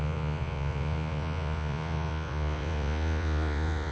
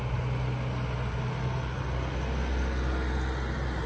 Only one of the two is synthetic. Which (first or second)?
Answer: first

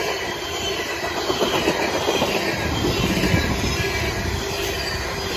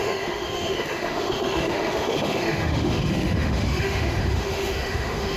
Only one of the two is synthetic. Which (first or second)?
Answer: second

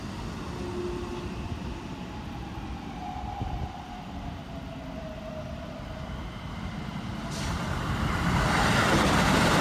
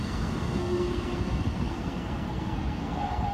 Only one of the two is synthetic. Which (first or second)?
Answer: second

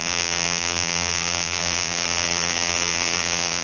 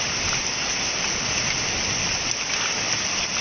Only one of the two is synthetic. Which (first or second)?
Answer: first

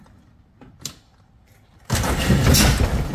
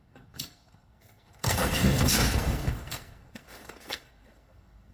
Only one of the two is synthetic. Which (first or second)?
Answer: second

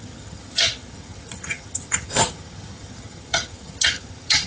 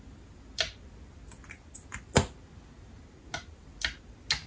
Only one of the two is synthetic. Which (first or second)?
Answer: first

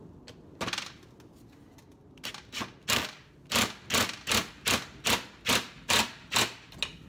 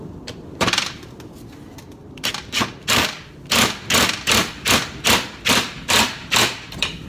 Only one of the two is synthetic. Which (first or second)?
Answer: second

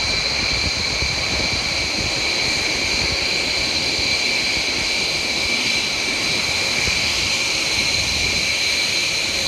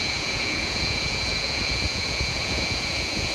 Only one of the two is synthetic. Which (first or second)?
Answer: second